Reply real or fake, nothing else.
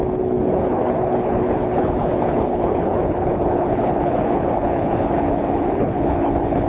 fake